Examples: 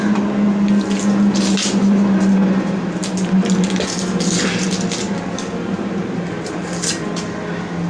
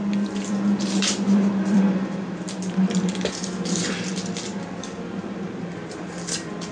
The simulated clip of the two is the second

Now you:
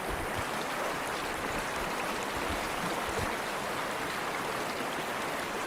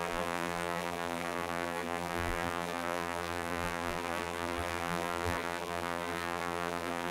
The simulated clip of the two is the second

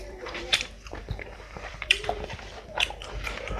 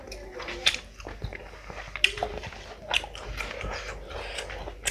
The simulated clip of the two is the first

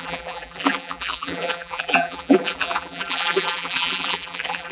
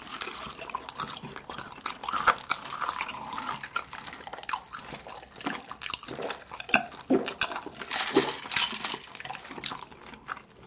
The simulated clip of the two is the first